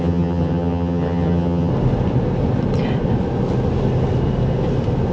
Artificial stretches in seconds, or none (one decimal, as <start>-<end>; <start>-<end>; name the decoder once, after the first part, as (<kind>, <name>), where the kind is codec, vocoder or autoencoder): 0.0-1.7 (vocoder, HiFi-GAN)